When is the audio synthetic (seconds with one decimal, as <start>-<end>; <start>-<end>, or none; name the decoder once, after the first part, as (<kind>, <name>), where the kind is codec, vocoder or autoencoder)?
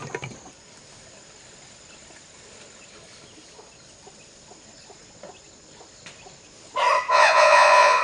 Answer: 7.1-8.0 (vocoder, Vocos)